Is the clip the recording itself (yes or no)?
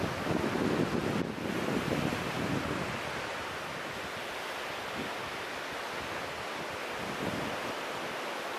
yes